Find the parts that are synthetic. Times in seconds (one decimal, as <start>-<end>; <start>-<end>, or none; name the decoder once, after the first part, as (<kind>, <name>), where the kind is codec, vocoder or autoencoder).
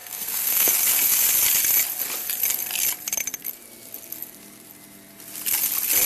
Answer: 0.0-0.7 (codec, SNAC)